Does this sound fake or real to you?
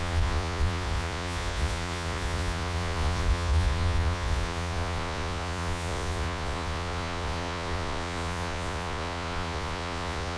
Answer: fake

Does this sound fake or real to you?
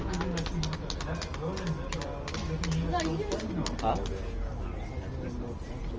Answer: real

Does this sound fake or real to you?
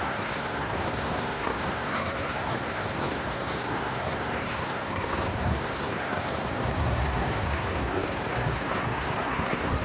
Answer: fake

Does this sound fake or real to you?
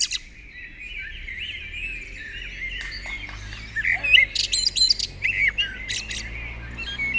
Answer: real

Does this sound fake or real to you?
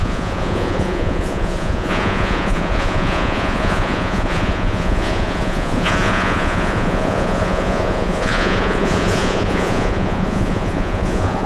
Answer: fake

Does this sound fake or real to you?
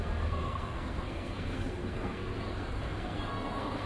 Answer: fake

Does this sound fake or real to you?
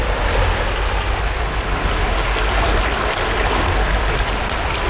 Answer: real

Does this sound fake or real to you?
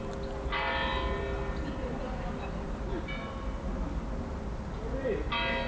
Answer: real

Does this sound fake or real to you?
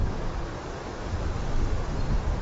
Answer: real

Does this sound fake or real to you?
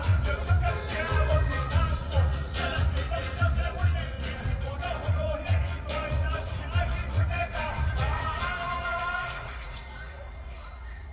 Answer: fake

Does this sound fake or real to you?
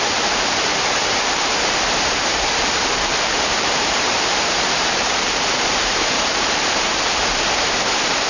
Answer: fake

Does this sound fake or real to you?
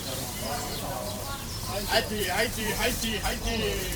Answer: fake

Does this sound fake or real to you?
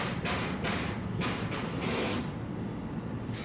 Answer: real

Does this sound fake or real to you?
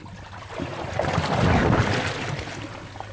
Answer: real